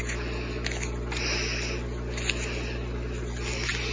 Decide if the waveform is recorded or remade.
recorded